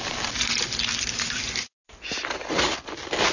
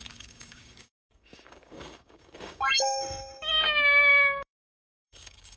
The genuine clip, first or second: first